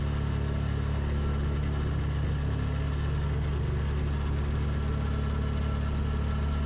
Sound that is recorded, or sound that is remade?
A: recorded